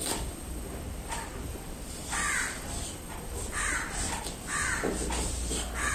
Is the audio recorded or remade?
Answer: recorded